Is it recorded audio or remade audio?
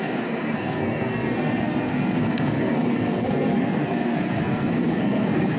remade